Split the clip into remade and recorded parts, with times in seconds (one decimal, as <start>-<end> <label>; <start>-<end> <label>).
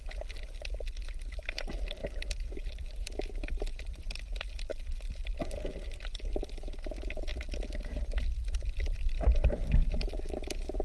0.0-2.0 recorded; 2.0-4.0 remade; 4.0-10.8 recorded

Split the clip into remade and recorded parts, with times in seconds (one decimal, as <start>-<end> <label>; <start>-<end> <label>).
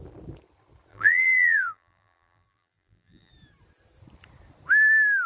0.0-0.9 recorded; 0.9-3.3 remade; 3.3-5.3 recorded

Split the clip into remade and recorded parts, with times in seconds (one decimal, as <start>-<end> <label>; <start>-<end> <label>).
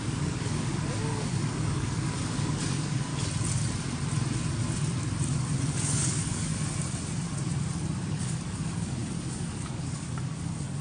0.0-3.1 remade; 3.1-5.7 recorded; 5.7-6.5 remade; 6.5-8.1 recorded; 8.1-10.8 remade